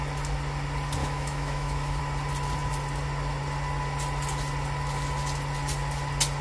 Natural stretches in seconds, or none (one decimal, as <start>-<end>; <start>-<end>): 0.0-1.0; 2.0-6.4